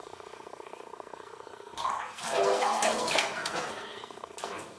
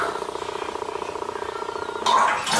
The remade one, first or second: first